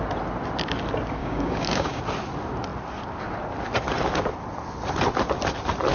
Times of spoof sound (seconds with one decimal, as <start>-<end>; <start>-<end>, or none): 1.2-2.0

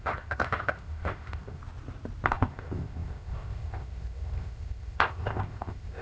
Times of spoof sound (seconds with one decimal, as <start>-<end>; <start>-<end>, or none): 0.0-1.6; 2.3-6.0

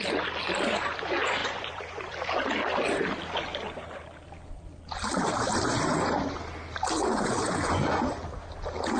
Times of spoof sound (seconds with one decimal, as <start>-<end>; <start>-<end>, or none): 1.4-2.0; 7.0-8.1